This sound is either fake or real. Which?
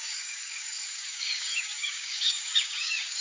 fake